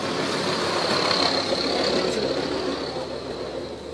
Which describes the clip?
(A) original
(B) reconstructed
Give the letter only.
A